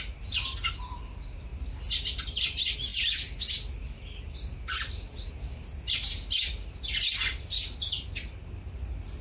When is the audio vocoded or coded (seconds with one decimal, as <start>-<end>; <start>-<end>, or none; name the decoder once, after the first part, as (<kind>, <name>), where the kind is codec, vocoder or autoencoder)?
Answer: none